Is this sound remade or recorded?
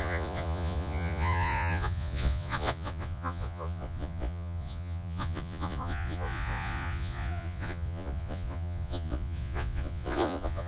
remade